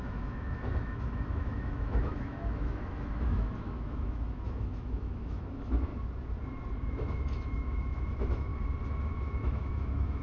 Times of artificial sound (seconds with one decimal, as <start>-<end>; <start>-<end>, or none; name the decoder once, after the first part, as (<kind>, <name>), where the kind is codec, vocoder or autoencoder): 0.0-5.9 (autoencoder, DAC-VAE); 6.7-8.5; 9.1-10.2